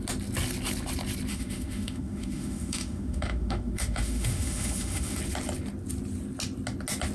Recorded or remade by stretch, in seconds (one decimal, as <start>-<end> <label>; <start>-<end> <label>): 0.0-1.3 recorded; 1.3-5.2 remade; 5.2-7.1 recorded